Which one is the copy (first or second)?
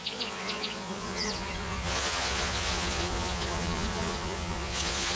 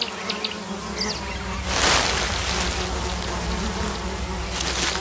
first